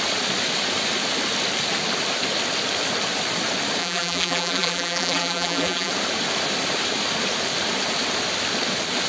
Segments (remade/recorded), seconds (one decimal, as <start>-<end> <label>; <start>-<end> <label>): 0.0-3.8 recorded; 3.8-5.9 remade; 5.9-9.1 recorded